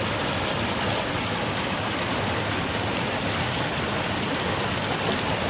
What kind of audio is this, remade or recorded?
recorded